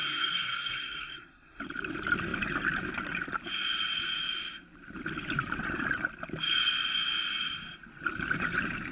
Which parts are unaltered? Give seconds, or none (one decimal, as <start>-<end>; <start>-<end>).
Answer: 1.6-8.9